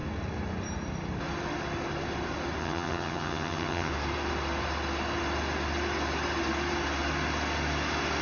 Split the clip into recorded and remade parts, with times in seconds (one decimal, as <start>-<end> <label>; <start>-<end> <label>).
0.0-2.6 recorded; 2.6-3.9 remade; 3.9-8.2 recorded

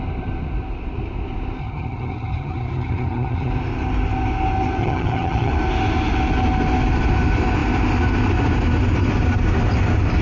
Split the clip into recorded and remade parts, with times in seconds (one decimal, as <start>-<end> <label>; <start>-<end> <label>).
0.0-1.6 recorded; 1.6-3.5 remade; 3.5-4.8 recorded; 4.8-5.5 remade; 5.5-10.2 recorded

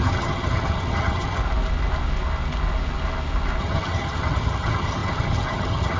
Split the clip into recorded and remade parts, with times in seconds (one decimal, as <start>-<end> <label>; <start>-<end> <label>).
0.0-1.4 remade; 1.4-3.6 recorded; 3.6-6.0 remade

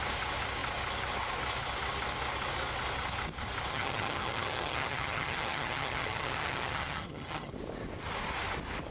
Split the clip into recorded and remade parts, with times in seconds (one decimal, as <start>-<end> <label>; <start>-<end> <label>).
0.0-3.7 recorded; 3.7-7.5 remade; 7.5-8.9 recorded

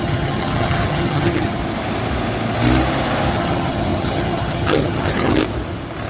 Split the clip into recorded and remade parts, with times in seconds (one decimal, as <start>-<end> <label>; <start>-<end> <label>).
0.0-1.6 remade; 1.6-3.3 recorded; 3.3-5.4 remade; 5.4-6.1 recorded